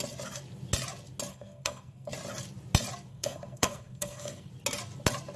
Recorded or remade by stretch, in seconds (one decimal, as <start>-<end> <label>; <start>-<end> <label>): 0.0-1.3 recorded; 1.3-2.1 remade; 2.1-3.1 recorded; 3.1-4.5 remade; 4.5-5.4 recorded